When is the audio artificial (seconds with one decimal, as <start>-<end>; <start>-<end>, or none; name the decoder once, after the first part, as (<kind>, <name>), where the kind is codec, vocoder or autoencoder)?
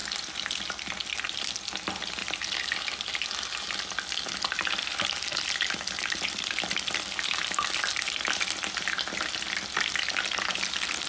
none